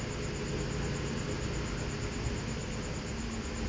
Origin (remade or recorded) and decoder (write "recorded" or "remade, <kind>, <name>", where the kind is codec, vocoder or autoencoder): recorded